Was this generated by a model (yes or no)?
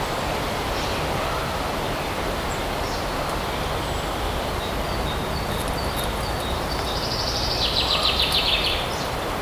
yes